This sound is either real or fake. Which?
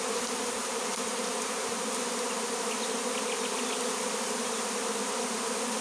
real